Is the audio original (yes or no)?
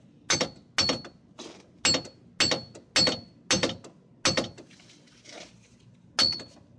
yes